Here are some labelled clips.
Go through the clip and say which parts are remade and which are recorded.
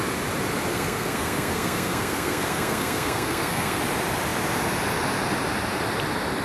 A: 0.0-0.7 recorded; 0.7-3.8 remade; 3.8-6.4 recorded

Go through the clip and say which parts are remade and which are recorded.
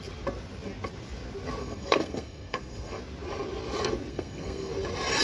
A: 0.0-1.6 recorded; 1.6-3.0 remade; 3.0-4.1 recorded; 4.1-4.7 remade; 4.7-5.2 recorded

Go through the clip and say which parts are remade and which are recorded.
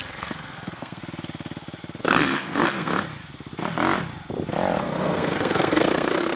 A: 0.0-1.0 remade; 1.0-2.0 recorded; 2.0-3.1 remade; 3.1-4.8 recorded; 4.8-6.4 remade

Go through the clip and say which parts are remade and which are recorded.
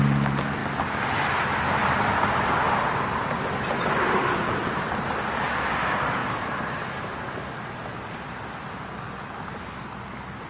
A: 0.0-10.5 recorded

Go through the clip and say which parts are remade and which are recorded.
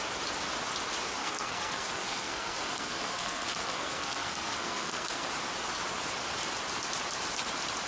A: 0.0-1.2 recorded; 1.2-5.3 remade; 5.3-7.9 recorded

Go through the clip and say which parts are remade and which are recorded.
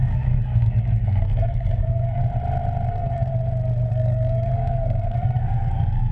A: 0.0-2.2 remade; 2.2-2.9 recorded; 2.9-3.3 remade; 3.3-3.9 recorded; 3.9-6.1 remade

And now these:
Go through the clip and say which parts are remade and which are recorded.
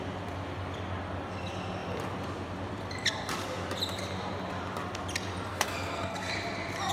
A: 0.0-5.5 recorded; 5.5-6.3 remade; 6.3-6.9 recorded